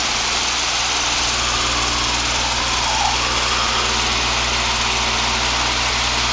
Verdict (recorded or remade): recorded